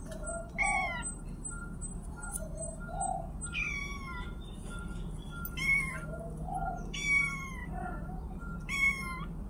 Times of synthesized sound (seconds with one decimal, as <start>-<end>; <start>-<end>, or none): 7.6-8.2